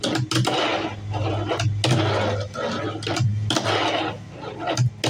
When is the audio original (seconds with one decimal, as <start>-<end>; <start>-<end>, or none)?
0.0-5.1